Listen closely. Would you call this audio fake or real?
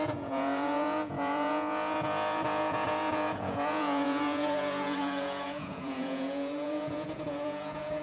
fake